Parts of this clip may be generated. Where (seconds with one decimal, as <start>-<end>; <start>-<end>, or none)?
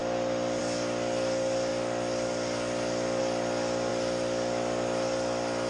none